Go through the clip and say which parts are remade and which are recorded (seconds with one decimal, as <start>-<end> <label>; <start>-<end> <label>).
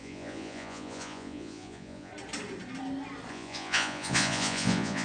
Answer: 0.0-2.1 remade; 2.1-3.3 recorded; 3.3-5.0 remade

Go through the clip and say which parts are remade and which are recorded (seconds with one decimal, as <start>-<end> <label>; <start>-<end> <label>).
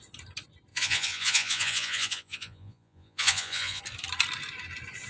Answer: 0.0-0.7 recorded; 0.7-3.8 remade; 3.8-5.1 recorded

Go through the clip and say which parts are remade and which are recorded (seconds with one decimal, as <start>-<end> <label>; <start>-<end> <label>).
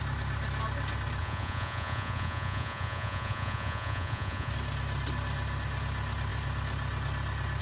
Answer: 0.0-1.2 recorded; 1.2-4.5 remade; 4.5-7.6 recorded